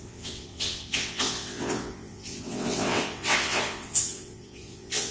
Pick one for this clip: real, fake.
fake